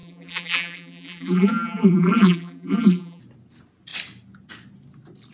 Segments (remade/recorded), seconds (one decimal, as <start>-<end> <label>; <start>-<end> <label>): 0.0-3.2 remade; 3.2-5.3 recorded